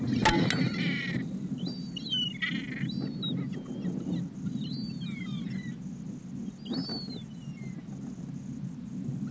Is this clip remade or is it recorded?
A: recorded